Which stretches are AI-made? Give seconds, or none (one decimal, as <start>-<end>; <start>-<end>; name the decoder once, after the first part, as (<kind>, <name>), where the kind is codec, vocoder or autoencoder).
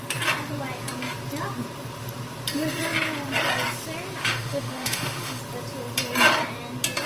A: 4.2-5.4 (autoencoder, DAC-VAE)